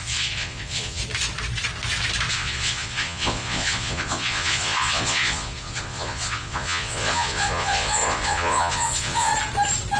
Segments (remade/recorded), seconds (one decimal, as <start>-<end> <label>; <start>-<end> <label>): 0.0-1.0 remade; 1.0-2.3 recorded; 2.3-9.3 remade; 9.3-10.0 recorded